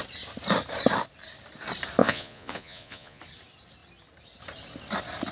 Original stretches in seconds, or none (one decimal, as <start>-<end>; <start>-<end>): 0.0-2.0; 3.2-5.3